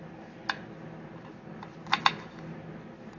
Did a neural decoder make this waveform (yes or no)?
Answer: no